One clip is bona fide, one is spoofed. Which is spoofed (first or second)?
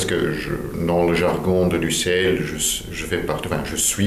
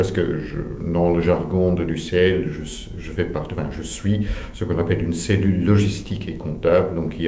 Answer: second